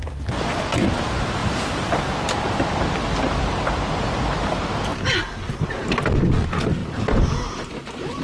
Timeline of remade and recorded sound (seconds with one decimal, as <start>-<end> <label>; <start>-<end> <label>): 0.0-1.4 recorded; 1.4-2.0 remade; 2.0-6.8 recorded; 6.8-8.2 remade